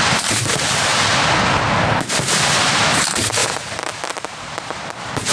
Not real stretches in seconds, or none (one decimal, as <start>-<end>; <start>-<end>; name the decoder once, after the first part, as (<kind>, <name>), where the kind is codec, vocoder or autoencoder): 0.0-0.9 (vocoder, BigVGAN v2); 2.6-5.3